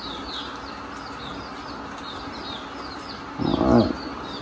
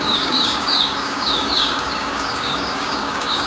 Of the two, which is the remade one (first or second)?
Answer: second